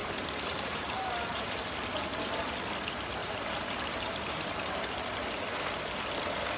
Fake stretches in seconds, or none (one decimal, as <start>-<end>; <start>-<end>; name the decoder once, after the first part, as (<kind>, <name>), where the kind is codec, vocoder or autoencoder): 0.0-1.6 (vocoder, BigVGAN v2); 3.2-5.1